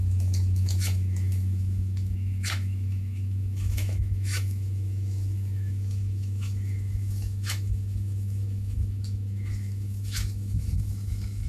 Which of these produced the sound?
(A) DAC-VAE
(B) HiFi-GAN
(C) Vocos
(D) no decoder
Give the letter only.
A